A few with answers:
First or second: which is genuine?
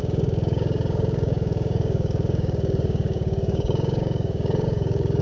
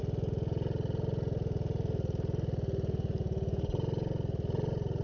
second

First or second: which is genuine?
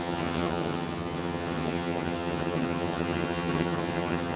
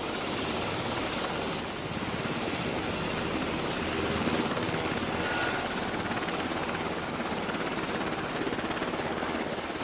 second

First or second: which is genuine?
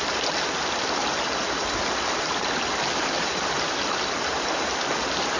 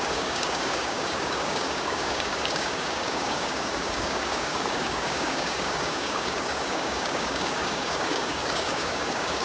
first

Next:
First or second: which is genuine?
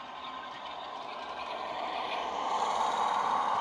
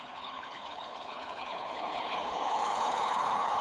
first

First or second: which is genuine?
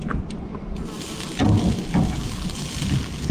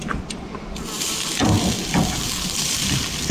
first